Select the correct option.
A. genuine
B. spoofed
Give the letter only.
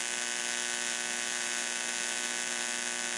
A